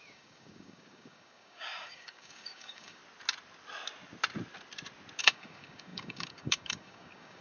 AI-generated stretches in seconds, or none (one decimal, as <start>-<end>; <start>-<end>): 0.0-3.0; 5.2-7.4